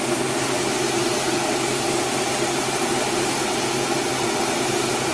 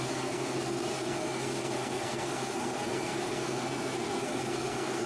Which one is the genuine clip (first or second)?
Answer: first